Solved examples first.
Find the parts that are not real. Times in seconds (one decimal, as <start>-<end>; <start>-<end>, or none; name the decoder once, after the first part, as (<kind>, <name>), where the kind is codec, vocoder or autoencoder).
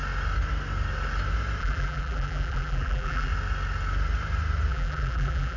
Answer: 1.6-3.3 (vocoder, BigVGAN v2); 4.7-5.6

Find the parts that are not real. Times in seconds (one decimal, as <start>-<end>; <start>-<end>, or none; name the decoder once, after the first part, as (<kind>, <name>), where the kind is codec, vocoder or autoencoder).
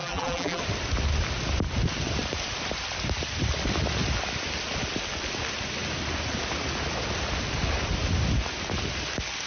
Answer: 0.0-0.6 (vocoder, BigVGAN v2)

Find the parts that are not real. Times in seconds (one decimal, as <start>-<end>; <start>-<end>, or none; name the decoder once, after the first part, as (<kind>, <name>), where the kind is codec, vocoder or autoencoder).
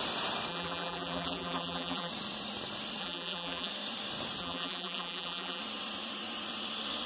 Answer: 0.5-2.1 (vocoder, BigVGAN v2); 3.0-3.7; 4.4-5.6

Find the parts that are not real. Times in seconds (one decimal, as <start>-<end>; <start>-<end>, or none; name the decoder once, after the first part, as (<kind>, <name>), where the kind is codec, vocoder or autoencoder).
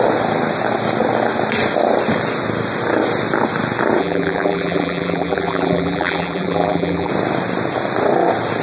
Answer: 4.0-7.1 (vocoder, BigVGAN v2)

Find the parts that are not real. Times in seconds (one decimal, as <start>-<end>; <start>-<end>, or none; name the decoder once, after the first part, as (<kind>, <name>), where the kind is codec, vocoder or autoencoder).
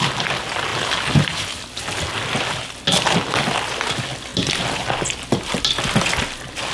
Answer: 0.7-2.1 (vocoder, BigVGAN v2)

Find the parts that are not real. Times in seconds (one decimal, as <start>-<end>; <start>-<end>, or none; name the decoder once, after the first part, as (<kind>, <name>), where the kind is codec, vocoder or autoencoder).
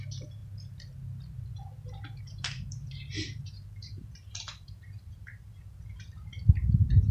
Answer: 0.0-0.4 (vocoder, BigVGAN v2); 2.2-7.1